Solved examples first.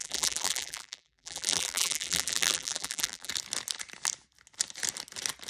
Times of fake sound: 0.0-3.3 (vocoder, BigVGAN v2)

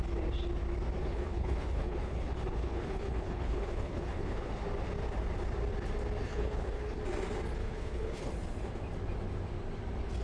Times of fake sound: 1.0-4.5 (codec, HILCodec); 6.2-7.0; 7.6-8.3

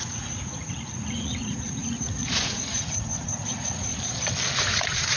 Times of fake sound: 0.0-3.9 (vocoder, Vocos); 4.6-5.2